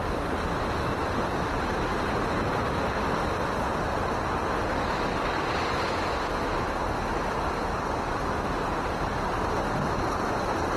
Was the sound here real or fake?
real